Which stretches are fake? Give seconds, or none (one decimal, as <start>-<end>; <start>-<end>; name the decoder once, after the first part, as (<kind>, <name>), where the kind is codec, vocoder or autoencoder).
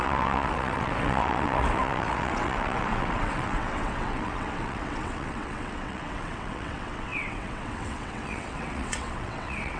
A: 0.0-9.8 (vocoder, WaveNeXt)